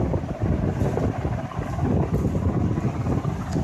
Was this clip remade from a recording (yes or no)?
no